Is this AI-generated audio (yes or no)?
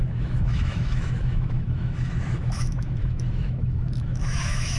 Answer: yes